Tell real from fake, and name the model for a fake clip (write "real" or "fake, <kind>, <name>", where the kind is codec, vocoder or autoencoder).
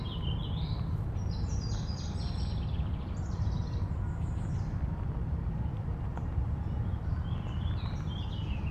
fake, vocoder, BigVGAN v2